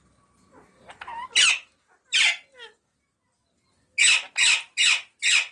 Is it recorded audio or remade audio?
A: recorded